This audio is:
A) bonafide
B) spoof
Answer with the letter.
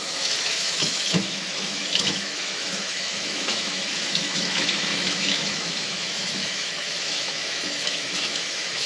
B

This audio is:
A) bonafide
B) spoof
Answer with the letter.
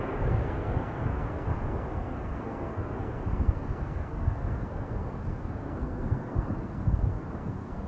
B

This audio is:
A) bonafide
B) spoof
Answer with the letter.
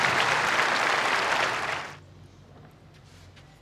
A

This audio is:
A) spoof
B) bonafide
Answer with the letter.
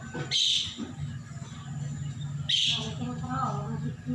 B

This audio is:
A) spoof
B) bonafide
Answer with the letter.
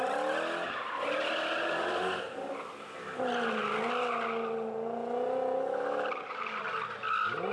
B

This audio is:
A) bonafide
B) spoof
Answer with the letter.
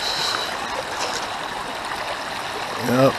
A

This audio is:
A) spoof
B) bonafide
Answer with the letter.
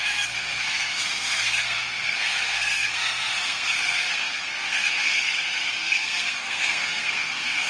A